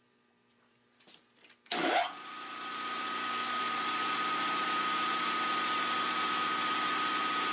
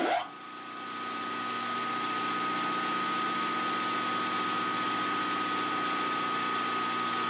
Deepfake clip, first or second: first